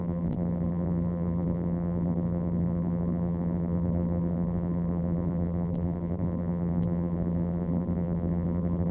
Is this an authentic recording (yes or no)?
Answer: no